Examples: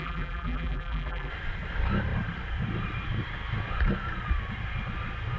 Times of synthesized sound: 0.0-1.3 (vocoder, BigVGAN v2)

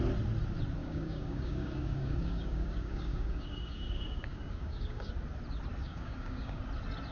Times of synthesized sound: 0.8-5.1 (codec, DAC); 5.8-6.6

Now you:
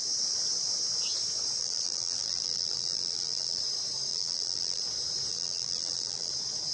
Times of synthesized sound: 1.6-3.6 (vocoder, BigVGAN v2); 4.1-4.8; 5.3-6.3

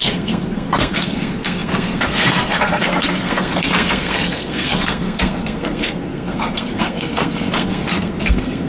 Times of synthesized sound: 0.0-8.7 (codec, SNAC)